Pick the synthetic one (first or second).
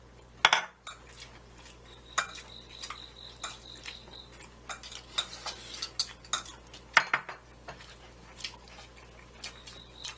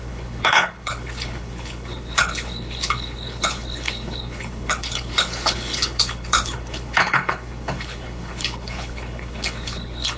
second